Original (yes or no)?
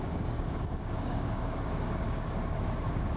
no